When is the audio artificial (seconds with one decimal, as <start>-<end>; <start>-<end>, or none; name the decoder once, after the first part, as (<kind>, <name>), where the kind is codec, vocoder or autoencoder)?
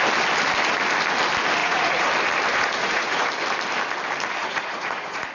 1.6-2.1 (vocoder, Vocos); 2.5-3.3; 4.4-5.3